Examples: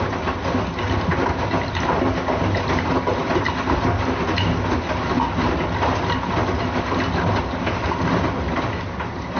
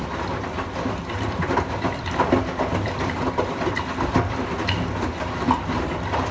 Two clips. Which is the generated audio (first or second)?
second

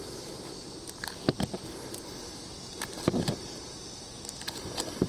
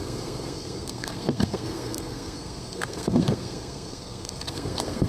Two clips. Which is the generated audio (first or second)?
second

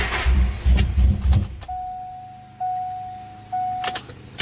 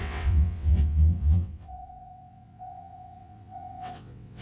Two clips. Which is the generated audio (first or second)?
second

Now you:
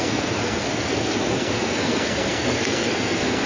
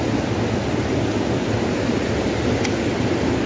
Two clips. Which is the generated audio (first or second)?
first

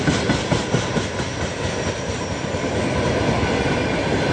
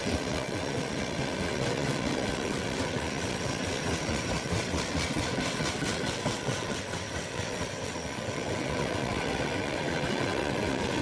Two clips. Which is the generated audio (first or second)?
second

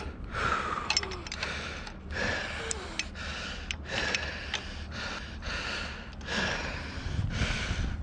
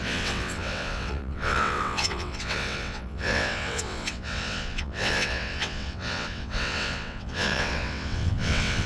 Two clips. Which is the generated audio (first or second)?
second